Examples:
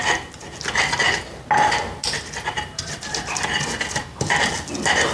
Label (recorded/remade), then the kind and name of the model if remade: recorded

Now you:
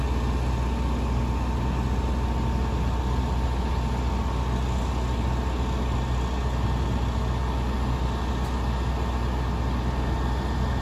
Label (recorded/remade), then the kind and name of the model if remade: recorded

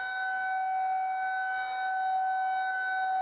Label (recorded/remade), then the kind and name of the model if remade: recorded